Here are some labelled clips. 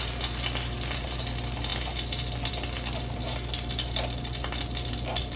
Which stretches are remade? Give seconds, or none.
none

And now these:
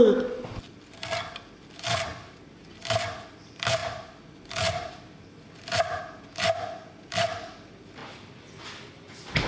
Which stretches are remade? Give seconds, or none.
3.8-6.0 (vocoder, BigVGAN v2)

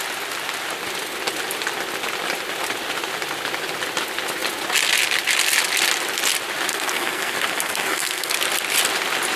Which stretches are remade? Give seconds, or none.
6.7-8.3 (codec, SNAC)

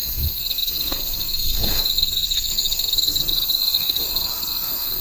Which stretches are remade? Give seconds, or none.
0.0-5.0 (codec, SNAC)

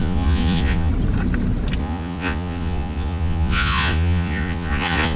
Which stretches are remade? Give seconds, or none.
0.0-0.9 (vocoder, Vocos); 1.8-5.2